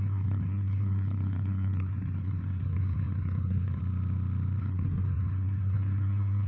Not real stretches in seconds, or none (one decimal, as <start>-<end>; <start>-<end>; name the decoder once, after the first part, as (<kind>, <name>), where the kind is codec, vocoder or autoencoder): 0.0-3.8 (codec, SNAC); 4.6-6.5